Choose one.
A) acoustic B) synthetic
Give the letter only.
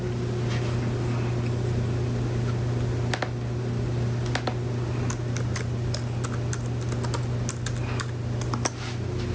A